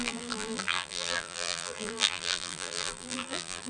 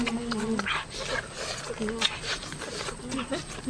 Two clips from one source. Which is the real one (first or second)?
second